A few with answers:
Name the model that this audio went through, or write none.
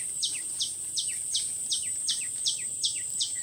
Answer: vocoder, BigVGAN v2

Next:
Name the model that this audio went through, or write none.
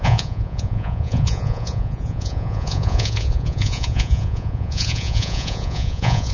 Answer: vocoder, Vocos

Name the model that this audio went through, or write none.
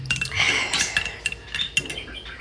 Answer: none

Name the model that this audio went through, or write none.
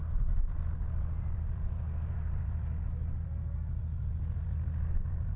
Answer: vocoder, BigVGAN v2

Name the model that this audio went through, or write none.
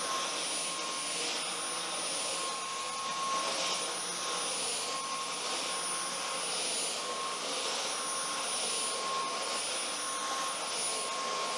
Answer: none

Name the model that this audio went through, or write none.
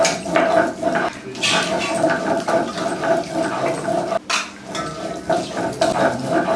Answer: none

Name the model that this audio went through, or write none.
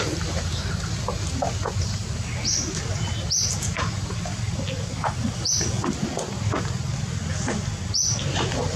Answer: none